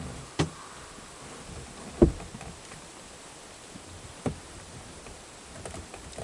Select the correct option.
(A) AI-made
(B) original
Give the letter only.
B